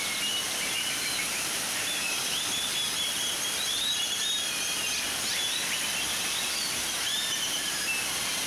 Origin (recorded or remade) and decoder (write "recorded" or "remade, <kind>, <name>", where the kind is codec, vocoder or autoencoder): remade, vocoder, BigVGAN v2